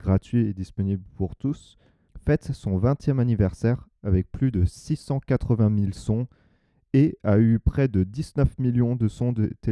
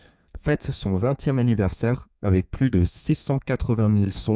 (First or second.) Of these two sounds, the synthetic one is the second